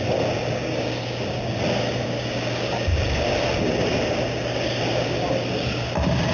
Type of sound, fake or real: real